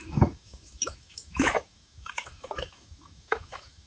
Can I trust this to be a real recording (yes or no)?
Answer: no